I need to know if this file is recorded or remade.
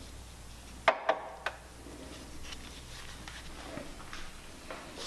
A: recorded